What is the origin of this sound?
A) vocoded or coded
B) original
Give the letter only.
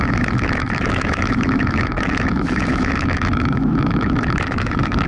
A